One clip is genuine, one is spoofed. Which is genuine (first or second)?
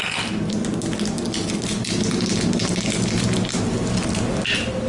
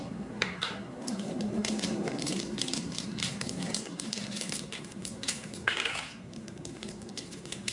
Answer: first